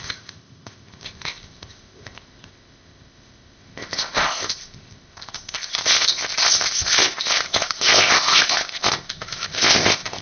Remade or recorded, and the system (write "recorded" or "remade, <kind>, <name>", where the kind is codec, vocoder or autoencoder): remade, codec, ZipCodec